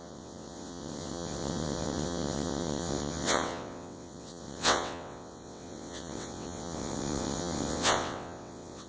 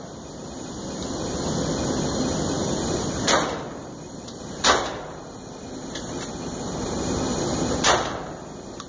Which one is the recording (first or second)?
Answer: second